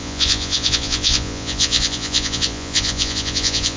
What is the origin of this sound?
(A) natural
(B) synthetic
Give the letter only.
B